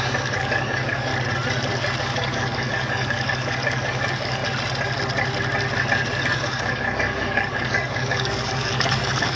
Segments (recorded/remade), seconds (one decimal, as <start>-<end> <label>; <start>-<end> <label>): 0.0-1.1 remade; 1.1-2.0 recorded; 2.0-4.4 remade; 4.4-6.2 recorded; 6.2-9.4 remade